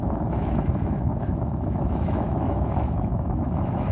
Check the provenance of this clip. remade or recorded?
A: remade